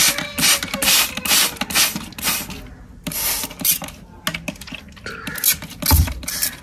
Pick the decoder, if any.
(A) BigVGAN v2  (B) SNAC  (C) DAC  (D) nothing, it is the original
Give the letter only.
D